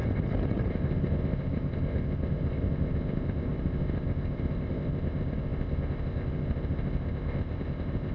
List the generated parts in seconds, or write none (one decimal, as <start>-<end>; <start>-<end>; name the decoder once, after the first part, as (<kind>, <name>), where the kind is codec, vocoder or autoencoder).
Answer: 0.7-8.1 (codec, ZipCodec)

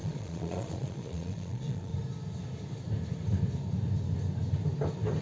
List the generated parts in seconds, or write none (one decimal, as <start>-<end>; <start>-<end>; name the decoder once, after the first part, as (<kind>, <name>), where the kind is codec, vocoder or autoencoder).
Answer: 0.0-1.9 (vocoder, Vocos)